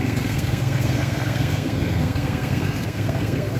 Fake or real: fake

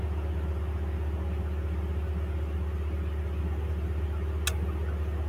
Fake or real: real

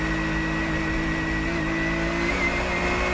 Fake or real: real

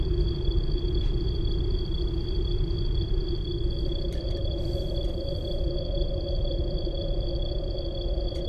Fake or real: fake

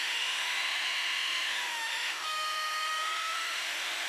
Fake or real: fake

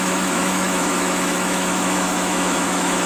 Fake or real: fake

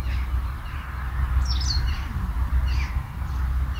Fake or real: real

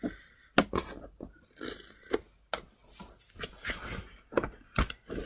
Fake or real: real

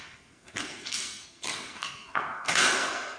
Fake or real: fake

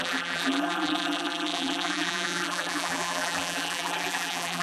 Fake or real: fake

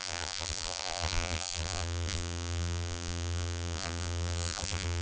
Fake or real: fake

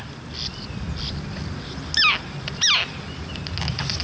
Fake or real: real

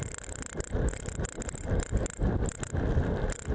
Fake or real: real